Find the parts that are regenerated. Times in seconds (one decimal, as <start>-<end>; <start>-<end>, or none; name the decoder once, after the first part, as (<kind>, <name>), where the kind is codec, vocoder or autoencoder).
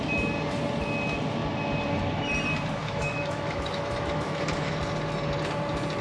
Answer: 2.8-4.8 (autoencoder, DAC-VAE)